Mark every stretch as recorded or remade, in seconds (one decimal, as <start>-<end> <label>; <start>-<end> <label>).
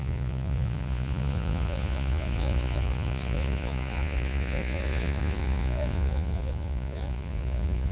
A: 0.0-7.9 remade